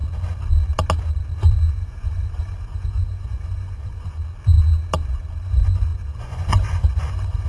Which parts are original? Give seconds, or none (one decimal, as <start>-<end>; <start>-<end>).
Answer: 0.0-1.7; 4.2-5.4